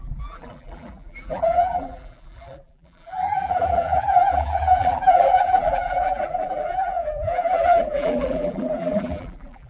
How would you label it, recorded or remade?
remade